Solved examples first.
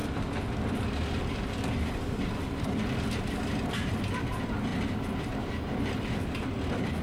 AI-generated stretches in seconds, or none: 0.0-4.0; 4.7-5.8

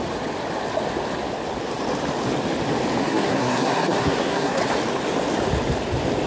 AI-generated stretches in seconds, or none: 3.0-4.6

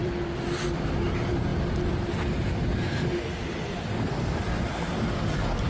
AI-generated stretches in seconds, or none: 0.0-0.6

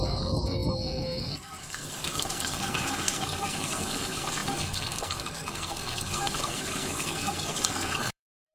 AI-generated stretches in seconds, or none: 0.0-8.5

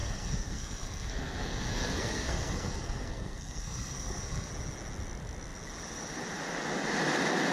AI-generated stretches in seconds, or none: 0.0-4.5

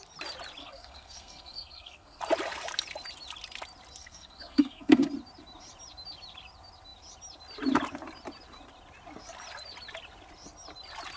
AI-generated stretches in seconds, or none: 0.6-2.2; 4.0-5.1